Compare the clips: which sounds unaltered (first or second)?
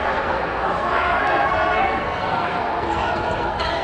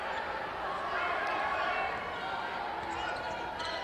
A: second